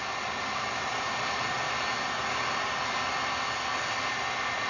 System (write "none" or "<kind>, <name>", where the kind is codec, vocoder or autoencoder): none